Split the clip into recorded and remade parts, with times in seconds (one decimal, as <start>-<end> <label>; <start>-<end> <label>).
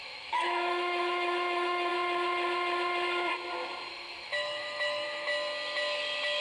0.0-1.9 remade; 1.9-3.9 recorded; 3.9-5.3 remade; 5.3-6.4 recorded